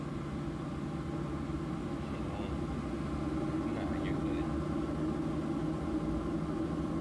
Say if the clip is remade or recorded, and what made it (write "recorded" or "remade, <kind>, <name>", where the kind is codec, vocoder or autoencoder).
recorded